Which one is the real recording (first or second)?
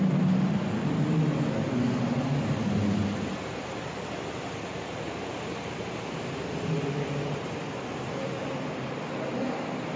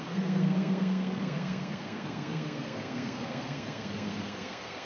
first